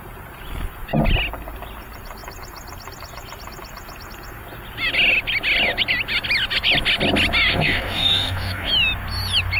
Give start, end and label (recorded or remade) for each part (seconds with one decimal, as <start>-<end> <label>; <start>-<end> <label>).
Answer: 0.0-7.5 recorded; 7.5-8.7 remade; 8.7-9.6 recorded